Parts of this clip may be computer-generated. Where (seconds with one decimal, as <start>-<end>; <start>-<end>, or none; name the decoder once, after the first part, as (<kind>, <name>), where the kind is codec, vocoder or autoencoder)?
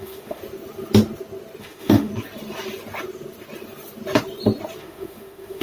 0.0-0.4 (autoencoder, DAC-VAE); 1.6-2.1; 4.8-5.6